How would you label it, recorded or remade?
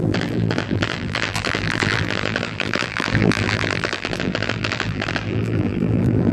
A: remade